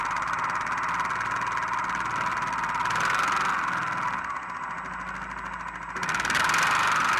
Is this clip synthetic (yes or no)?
no